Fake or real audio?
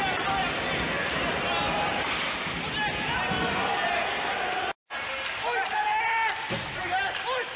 real